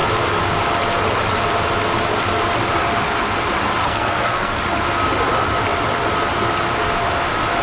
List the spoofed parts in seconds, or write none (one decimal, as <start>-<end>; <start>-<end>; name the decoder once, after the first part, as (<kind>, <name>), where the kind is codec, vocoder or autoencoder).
3.8-4.6 (codec, SNAC)